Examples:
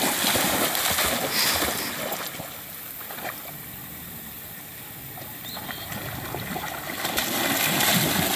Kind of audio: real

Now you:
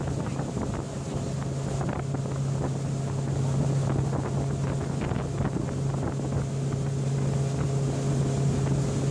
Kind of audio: real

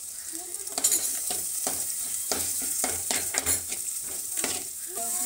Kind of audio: fake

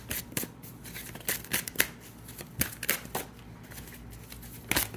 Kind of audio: real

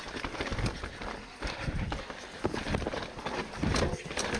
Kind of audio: real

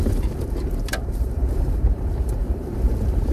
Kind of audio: fake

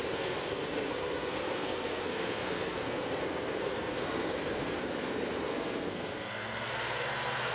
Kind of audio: fake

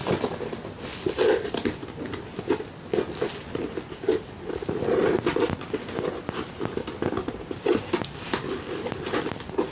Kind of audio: real